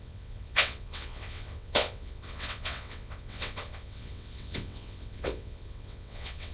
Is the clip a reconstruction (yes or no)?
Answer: yes